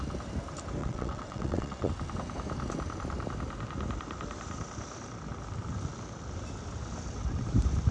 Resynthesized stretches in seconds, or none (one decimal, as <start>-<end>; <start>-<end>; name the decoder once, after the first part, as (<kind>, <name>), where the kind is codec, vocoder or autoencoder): 0.8-1.9 (vocoder, WaveNeXt)